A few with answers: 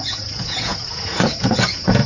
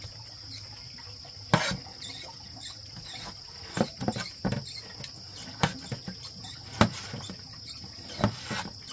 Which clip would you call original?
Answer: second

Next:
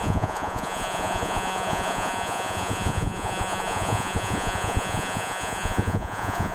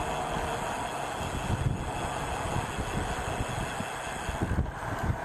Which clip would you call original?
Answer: second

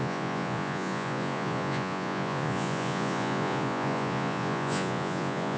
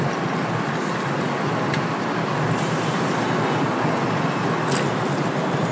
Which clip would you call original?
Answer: second